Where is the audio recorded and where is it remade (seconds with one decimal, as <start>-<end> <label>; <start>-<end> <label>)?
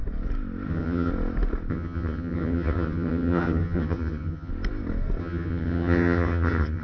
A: 0.0-0.7 recorded; 0.7-1.1 remade; 1.1-1.7 recorded; 1.7-4.5 remade; 4.5-5.2 recorded; 5.2-6.8 remade